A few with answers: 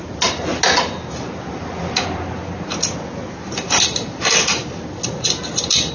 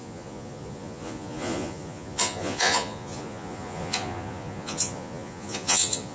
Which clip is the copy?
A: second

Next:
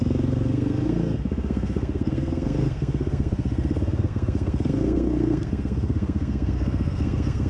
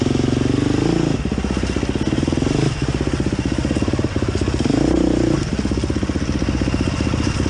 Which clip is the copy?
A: first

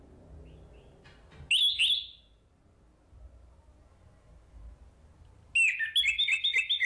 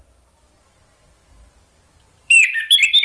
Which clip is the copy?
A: second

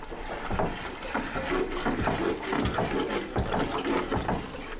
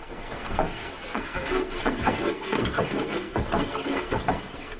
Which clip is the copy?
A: second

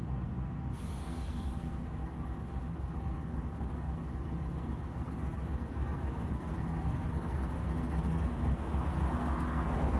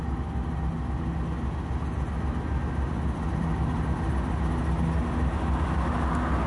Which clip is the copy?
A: first